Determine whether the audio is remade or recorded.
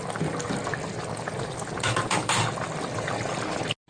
recorded